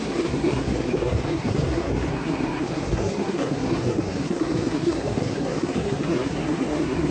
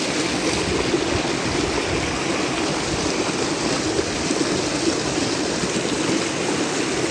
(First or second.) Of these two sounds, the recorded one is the second